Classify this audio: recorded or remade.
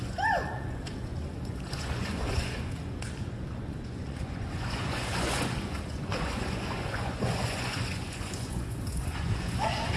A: remade